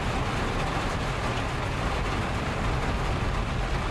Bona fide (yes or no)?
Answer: yes